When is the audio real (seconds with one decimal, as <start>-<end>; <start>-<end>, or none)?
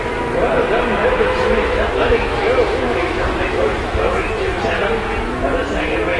0.0-1.0; 4.6-6.2